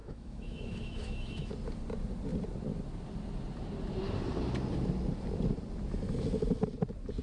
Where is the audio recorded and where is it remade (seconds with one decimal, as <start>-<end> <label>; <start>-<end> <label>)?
0.0-1.5 remade; 1.5-7.2 recorded